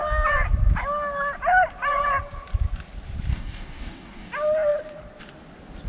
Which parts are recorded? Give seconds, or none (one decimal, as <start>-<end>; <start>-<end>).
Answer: 0.0-3.3; 4.3-5.9